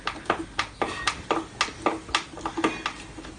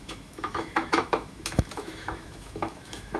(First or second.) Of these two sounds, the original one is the first